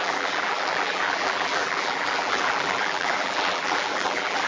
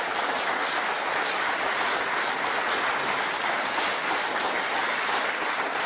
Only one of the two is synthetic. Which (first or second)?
first